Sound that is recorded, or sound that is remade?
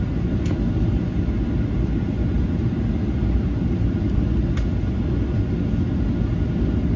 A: recorded